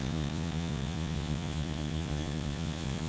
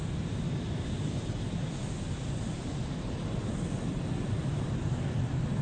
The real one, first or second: second